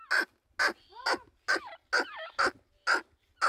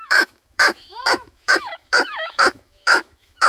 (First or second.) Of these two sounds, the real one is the first